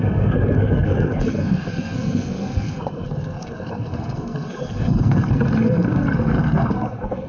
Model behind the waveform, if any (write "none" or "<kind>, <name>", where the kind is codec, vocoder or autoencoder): codec, SNAC